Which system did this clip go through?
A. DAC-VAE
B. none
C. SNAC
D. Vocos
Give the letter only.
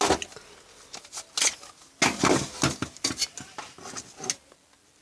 B